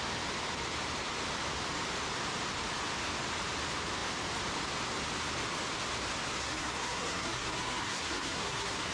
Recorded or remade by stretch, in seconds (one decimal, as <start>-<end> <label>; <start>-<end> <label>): 0.0-6.4 recorded; 6.4-8.9 remade